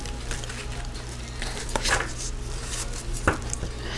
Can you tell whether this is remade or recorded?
recorded